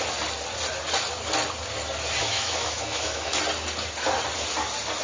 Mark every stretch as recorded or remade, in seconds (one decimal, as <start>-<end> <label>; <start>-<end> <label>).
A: 0.0-2.2 recorded; 2.2-3.4 remade; 3.4-5.0 recorded